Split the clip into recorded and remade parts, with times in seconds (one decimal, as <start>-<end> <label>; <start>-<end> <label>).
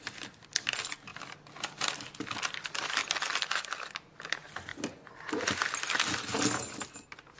0.0-7.4 recorded